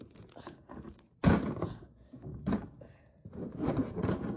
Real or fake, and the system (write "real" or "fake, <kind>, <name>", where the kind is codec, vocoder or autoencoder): fake, vocoder, Vocos